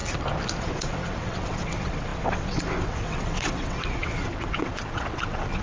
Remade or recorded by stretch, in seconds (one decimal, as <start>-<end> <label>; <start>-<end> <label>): 0.0-0.6 recorded; 0.6-5.6 remade